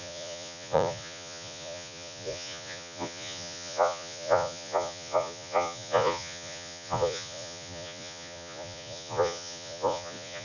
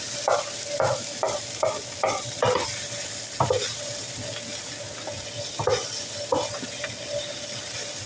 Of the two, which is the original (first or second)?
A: second